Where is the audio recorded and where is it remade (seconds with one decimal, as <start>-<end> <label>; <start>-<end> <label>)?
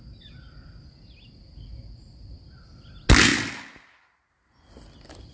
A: 0.0-5.3 recorded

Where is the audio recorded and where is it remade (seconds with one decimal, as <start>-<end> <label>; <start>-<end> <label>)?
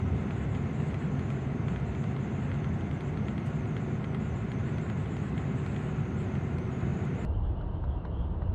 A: 0.0-6.9 recorded; 6.9-8.5 remade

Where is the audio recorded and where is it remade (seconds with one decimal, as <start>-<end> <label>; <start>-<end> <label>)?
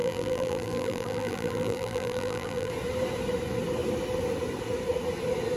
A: 0.0-2.7 remade; 2.7-5.6 recorded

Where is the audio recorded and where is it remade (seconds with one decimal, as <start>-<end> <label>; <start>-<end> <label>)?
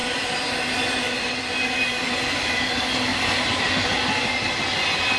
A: 0.0-3.1 recorded; 3.1-3.9 remade; 3.9-5.2 recorded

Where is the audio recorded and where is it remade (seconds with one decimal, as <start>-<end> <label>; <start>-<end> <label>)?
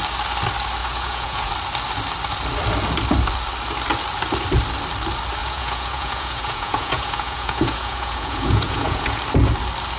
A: 0.0-0.8 recorded; 0.8-1.5 remade; 1.5-5.4 recorded; 5.4-9.2 remade; 9.2-10.0 recorded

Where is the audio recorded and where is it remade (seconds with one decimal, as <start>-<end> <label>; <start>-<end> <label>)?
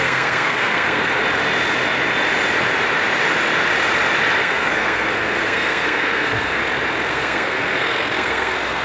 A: 0.0-1.2 remade; 1.2-4.4 recorded; 4.4-6.6 remade; 6.6-7.1 recorded; 7.1-8.8 remade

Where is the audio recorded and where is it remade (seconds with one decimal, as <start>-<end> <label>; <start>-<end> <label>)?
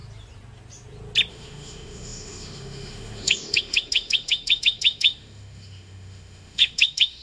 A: 0.0-1.3 recorded; 1.3-7.2 remade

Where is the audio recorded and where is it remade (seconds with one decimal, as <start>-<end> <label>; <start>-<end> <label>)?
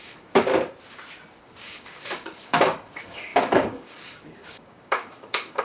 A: 0.0-0.5 remade; 0.5-1.4 recorded; 1.4-5.6 remade